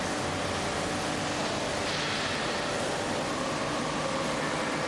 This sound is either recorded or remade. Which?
recorded